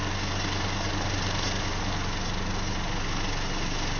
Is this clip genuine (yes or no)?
yes